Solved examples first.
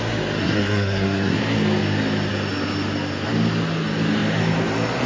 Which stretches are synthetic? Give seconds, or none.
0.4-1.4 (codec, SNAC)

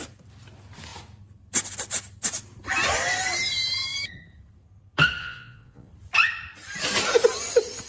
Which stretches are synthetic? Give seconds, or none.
5.2-5.9 (vocoder, Vocos)

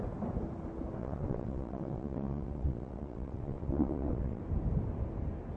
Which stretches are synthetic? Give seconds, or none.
1.0-4.4 (vocoder, WaveNeXt)